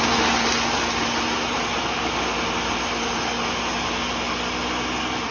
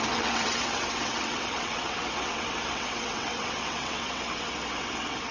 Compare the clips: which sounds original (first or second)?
first